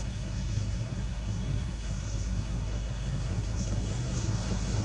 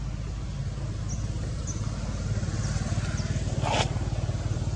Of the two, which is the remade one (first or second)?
first